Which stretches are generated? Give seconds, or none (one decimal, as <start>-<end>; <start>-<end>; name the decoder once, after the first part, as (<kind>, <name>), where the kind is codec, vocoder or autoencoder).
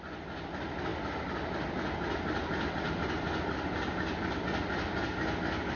none